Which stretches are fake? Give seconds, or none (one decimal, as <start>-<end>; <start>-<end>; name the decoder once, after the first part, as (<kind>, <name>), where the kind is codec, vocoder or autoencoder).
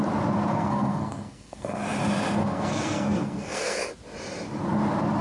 0.5-1.8 (codec, SNAC); 2.4-3.9